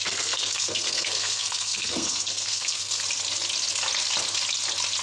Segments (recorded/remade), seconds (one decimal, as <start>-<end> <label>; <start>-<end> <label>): 0.0-3.0 remade; 3.0-5.0 recorded